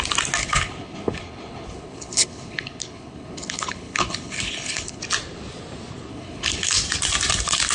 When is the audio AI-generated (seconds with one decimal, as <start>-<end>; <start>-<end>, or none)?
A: 0.4-5.0; 6.1-6.8